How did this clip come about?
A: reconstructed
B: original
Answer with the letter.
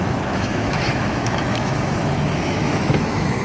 A